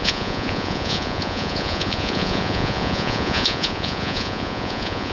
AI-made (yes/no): yes